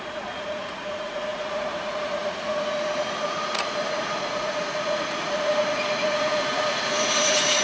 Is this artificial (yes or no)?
yes